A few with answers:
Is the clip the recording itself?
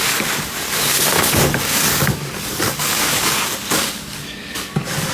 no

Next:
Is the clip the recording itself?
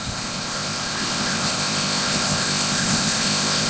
no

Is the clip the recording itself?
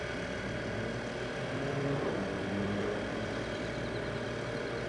no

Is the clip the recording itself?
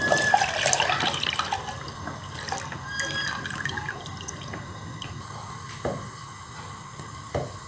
yes